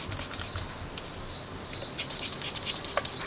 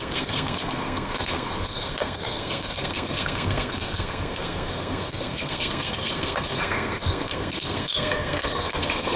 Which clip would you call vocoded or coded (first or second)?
second